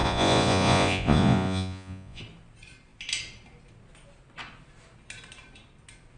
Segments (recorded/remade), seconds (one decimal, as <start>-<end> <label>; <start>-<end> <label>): 0.0-2.2 remade; 2.2-6.2 recorded